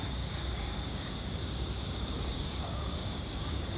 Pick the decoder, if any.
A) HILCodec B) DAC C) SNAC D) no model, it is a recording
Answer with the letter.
B